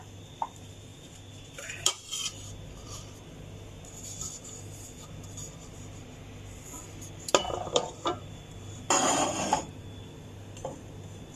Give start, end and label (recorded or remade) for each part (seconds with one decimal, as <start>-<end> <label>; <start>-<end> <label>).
0.0-0.9 recorded; 0.9-3.2 remade; 3.2-6.8 recorded; 6.8-9.8 remade; 9.8-11.4 recorded